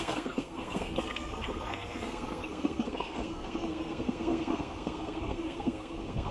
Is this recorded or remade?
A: remade